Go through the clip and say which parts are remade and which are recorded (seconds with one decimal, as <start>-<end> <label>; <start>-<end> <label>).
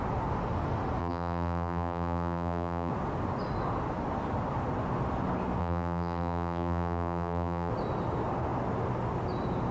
0.0-1.0 recorded; 1.0-2.9 remade; 2.9-5.6 recorded; 5.6-7.7 remade; 7.7-9.7 recorded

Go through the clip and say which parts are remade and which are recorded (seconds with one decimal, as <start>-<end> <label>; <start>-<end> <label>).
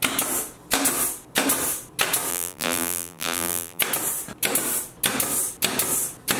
0.0-2.3 recorded; 2.3-3.8 remade; 3.8-6.4 recorded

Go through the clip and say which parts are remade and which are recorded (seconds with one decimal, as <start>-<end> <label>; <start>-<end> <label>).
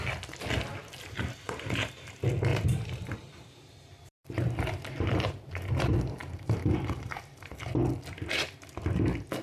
0.0-0.7 recorded; 0.7-2.0 remade; 2.0-2.5 recorded; 2.5-5.7 remade; 5.7-6.2 recorded; 6.2-7.5 remade; 7.5-9.4 recorded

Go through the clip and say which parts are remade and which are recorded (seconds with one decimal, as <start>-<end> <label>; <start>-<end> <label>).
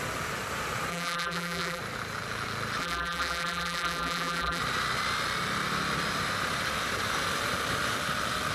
0.0-0.9 recorded; 0.9-1.8 remade; 1.8-2.8 recorded; 2.8-4.6 remade; 4.6-8.5 recorded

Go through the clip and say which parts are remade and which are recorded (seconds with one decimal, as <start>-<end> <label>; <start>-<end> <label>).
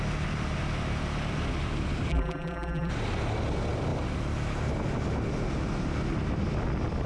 0.0-2.1 recorded; 2.1-2.9 remade; 2.9-7.1 recorded